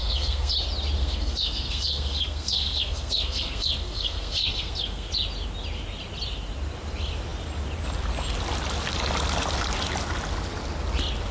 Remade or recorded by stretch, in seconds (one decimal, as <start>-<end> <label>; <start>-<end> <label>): 0.0-0.5 remade; 0.5-1.0 recorded; 1.0-5.1 remade; 5.1-11.3 recorded